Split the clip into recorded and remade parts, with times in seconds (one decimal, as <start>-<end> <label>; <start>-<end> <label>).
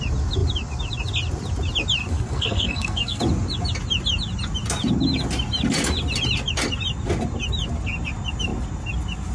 0.0-2.1 recorded; 2.1-3.2 remade; 3.2-9.3 recorded